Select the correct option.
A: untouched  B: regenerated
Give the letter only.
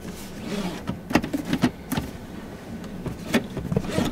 A